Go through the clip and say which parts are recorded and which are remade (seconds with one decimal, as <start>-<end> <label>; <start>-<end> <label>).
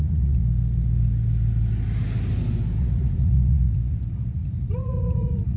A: 0.0-0.4 remade; 0.4-2.8 recorded; 2.8-5.6 remade